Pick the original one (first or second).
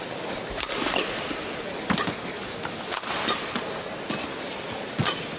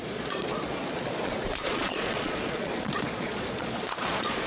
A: first